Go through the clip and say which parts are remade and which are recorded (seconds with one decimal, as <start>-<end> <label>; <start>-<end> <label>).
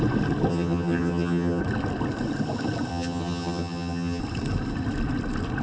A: 0.0-0.5 recorded; 0.5-1.6 remade; 1.6-2.9 recorded; 2.9-4.2 remade; 4.2-5.6 recorded